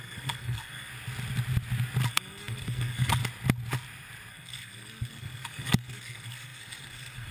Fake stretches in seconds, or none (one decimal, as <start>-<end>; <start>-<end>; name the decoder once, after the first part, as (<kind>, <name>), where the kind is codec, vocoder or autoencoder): 0.0-0.9 (codec, SNAC); 2.1-3.2; 4.3-7.3